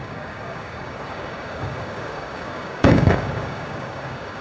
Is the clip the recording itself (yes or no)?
no